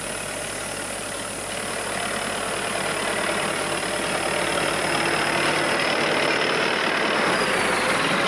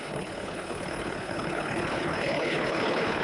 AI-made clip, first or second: second